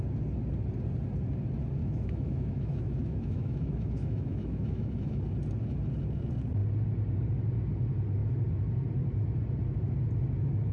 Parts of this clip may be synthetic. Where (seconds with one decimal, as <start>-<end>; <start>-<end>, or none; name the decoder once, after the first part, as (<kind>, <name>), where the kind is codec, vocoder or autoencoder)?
1.8-5.2 (autoencoder, DAC-VAE)